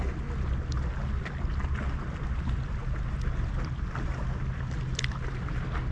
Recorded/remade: recorded